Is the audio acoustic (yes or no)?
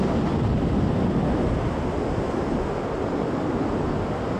yes